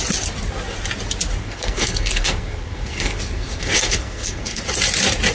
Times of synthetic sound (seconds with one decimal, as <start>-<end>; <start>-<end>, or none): 1.4-4.6